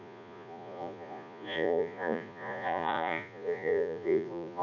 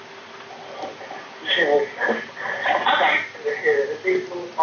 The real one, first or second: second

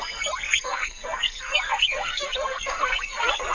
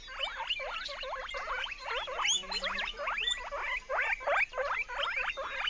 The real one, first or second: second